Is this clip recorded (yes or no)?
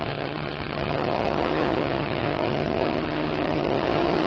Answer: no